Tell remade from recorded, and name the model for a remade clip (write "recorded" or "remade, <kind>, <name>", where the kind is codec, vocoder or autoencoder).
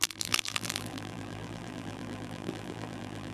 remade, vocoder, BigVGAN v2